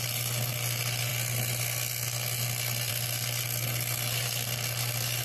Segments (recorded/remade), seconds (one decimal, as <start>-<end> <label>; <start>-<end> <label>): 0.0-5.2 recorded